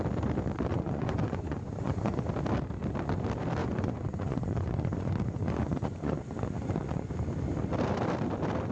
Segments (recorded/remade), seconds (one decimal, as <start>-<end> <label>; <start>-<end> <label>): 0.0-0.7 recorded; 0.7-2.2 remade; 2.2-3.6 recorded; 3.6-7.1 remade; 7.1-8.7 recorded